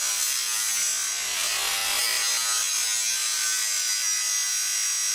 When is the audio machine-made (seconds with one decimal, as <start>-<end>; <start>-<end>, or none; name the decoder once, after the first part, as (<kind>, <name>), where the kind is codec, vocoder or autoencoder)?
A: none